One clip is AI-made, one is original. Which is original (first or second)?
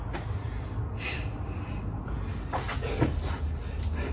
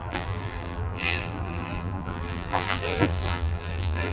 first